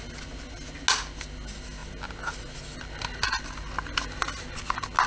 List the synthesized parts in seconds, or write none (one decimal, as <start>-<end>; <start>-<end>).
none